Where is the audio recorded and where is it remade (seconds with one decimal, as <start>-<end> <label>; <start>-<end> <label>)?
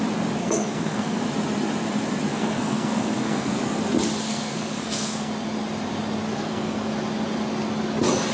0.0-0.4 recorded; 0.4-1.2 remade; 1.2-2.3 recorded; 2.3-3.6 remade; 3.6-4.3 recorded; 4.3-5.3 remade; 5.3-6.3 recorded; 6.3-6.9 remade; 6.9-8.3 recorded